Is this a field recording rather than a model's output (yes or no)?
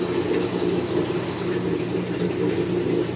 yes